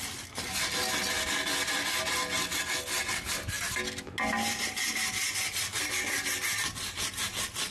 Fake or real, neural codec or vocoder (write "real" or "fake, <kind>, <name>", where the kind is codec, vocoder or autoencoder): real